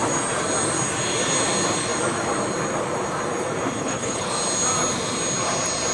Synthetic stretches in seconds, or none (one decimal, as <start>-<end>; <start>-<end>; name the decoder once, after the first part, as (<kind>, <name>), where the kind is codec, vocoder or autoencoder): 3.8-4.3 (codec, HILCodec)